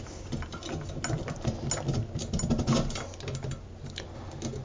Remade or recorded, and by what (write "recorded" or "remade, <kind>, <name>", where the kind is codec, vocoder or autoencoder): recorded